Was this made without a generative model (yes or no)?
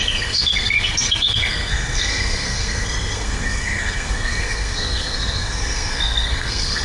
no